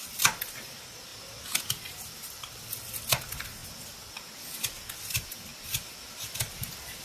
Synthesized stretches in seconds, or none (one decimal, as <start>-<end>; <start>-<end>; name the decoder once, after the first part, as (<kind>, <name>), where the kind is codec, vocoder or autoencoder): 0.0-1.1 (vocoder, BigVGAN v2); 1.6-3.6; 5.1-5.5; 6.5-7.0